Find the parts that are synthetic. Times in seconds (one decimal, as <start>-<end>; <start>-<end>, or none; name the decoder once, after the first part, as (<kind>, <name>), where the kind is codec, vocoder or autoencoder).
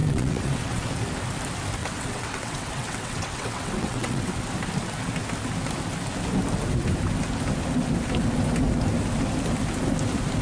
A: 0.0-0.9 (vocoder, WaveNeXt); 1.8-4.4